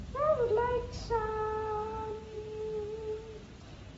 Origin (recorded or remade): recorded